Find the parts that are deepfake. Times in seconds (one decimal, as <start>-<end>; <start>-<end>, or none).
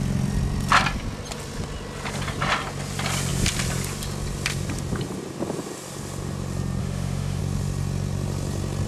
6.8-7.4